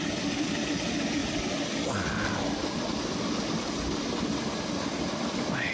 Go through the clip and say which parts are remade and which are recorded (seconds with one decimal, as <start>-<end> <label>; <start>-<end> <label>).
0.0-5.7 recorded